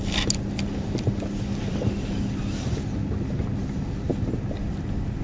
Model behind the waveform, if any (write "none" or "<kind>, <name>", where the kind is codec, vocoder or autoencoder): none